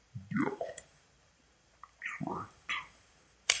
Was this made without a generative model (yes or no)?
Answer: no